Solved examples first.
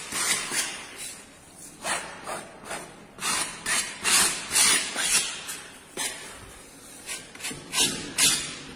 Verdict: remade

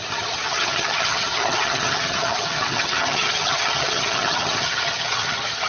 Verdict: remade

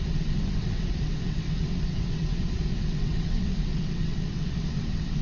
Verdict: remade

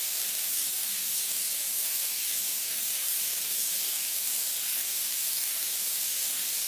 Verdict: remade